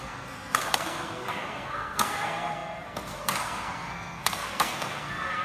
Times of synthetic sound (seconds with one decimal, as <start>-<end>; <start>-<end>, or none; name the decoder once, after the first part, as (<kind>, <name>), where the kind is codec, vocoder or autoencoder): 0.0-5.4 (codec, SNAC)